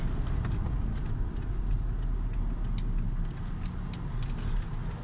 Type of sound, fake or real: real